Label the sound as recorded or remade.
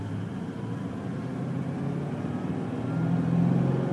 recorded